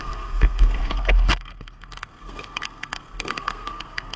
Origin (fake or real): fake